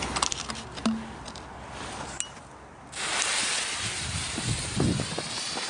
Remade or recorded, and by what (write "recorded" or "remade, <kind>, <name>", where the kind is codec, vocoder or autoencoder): recorded